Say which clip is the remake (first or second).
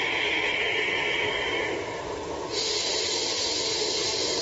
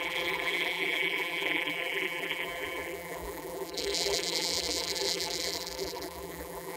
second